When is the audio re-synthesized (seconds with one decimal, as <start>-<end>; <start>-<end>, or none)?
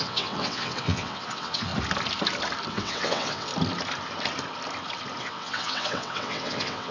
0.0-1.7; 2.7-3.5; 5.2-6.9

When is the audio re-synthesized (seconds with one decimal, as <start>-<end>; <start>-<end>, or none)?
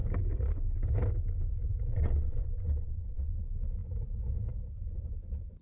1.9-3.3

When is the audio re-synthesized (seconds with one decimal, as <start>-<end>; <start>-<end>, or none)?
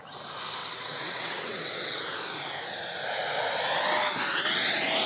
0.6-2.0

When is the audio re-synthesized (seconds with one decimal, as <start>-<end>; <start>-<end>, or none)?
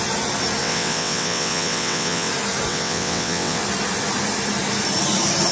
0.6-2.3; 2.7-3.6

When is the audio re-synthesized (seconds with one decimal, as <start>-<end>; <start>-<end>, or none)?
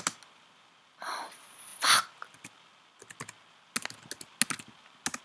none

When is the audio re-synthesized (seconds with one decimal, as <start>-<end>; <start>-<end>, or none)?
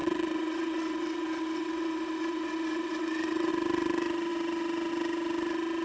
0.0-3.5